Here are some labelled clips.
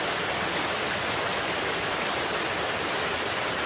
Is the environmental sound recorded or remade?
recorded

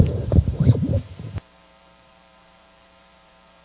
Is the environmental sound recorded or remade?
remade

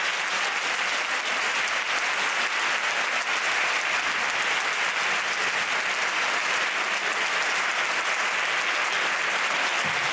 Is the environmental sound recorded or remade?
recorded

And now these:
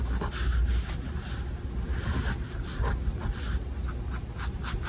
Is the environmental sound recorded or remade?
recorded